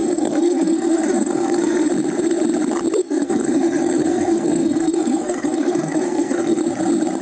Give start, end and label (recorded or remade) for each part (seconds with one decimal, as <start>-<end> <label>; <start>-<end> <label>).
0.0-1.9 remade; 1.9-3.0 recorded; 3.0-6.6 remade; 6.6-7.2 recorded